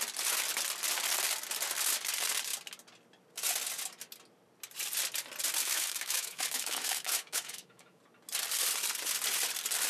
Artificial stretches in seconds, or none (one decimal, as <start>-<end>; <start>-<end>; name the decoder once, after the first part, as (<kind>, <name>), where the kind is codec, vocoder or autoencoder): 5.6-8.0 (autoencoder, DAC-VAE)